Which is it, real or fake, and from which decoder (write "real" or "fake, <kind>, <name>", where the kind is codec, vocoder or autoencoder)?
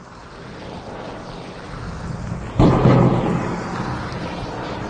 real